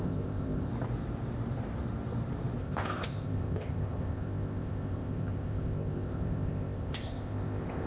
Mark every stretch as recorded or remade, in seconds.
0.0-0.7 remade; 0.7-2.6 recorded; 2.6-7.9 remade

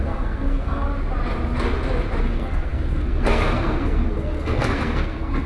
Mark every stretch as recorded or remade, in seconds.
0.0-0.9 remade; 0.9-2.2 recorded; 2.2-5.5 remade

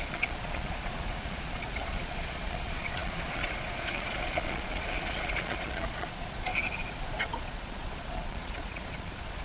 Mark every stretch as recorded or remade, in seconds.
0.0-6.5 remade; 6.5-7.2 recorded; 7.2-9.4 remade

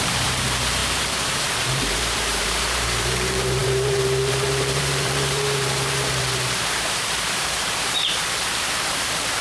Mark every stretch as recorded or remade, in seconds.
0.0-9.4 remade

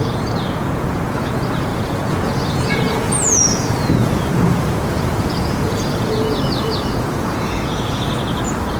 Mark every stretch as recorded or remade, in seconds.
0.0-8.8 remade

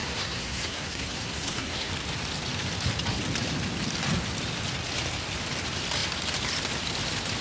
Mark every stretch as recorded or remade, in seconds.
0.0-1.9 remade; 1.9-7.4 recorded